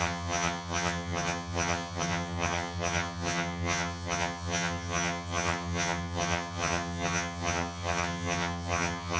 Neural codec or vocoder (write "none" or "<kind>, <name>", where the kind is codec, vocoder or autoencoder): vocoder, HiFi-GAN